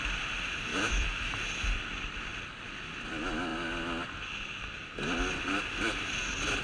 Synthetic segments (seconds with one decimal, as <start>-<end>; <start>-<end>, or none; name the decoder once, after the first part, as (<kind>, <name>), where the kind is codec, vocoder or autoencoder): 0.7-1.4 (autoencoder, DAC-VAE)